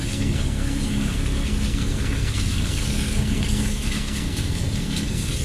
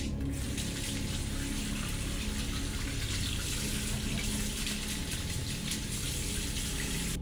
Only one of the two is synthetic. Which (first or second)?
first